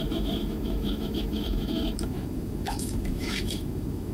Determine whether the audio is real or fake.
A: fake